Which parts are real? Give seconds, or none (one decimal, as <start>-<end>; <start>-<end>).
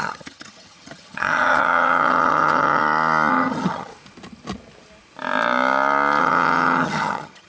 2.8-3.3; 3.9-6.2